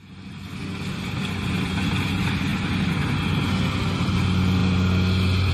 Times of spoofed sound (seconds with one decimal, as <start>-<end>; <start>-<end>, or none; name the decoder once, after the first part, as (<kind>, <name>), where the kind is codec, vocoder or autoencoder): none